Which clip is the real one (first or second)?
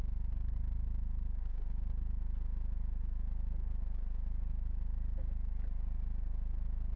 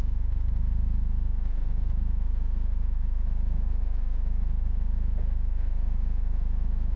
first